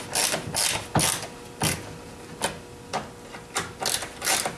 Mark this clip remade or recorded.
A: recorded